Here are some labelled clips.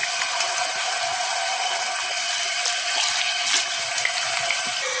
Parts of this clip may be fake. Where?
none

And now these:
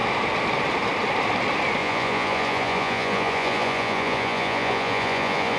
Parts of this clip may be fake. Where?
1.8-5.6 (vocoder, Vocos)